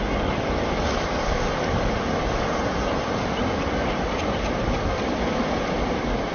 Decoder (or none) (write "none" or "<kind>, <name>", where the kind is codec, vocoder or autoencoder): none